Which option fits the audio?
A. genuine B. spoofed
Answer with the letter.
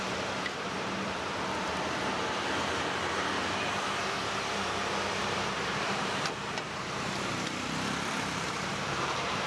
B